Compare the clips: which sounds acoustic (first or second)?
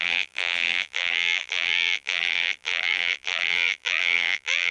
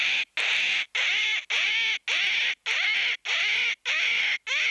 second